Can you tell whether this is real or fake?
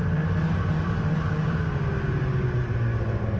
real